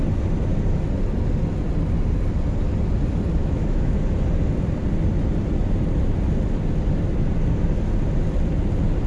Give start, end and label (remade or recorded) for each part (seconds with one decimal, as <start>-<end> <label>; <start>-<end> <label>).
0.0-3.4 recorded; 3.4-4.0 remade; 4.0-9.1 recorded